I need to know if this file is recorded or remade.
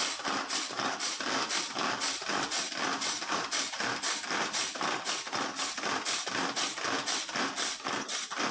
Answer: recorded